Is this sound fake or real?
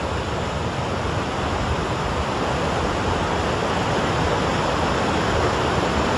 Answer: real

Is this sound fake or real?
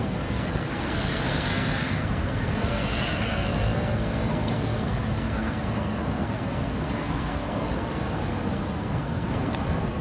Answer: fake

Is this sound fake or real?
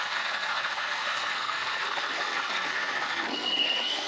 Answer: fake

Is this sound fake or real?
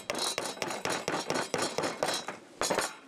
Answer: real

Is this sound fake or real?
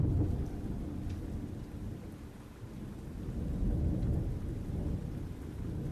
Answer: real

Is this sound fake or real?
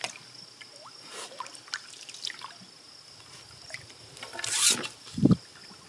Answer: real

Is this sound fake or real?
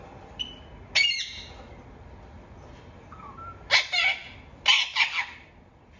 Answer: real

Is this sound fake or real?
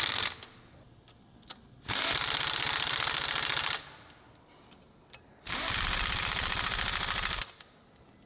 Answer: real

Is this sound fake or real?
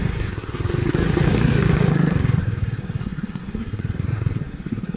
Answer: fake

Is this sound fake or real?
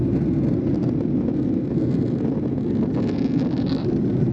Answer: real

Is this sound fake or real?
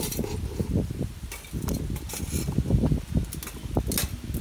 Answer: real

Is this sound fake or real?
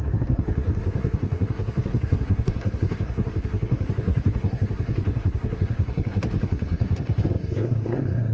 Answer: fake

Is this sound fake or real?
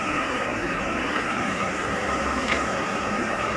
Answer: fake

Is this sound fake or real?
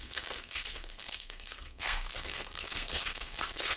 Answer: fake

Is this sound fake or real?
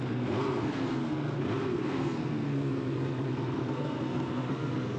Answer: fake